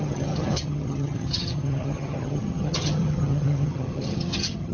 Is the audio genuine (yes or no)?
no